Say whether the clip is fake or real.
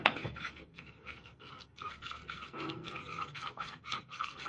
fake